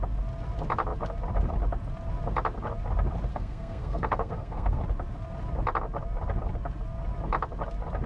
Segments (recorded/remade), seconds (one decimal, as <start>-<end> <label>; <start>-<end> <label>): 0.0-3.3 recorded; 3.3-4.8 remade; 4.8-8.1 recorded